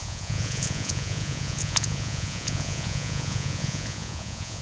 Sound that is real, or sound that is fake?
fake